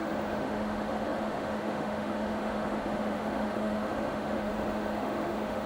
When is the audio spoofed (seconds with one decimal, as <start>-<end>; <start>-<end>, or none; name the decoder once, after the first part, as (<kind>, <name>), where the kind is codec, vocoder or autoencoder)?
0.0-5.7 (autoencoder, DAC-VAE)